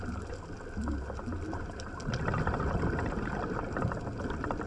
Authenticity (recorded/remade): recorded